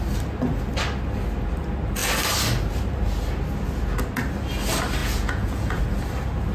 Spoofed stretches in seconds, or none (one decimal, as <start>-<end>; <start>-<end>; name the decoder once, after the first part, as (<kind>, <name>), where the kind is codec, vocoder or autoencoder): 5.0-5.8 (vocoder, Vocos)